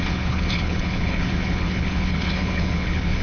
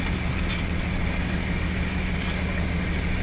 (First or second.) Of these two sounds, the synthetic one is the first